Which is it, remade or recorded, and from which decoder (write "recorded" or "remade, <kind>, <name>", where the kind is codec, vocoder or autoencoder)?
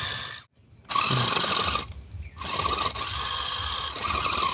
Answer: recorded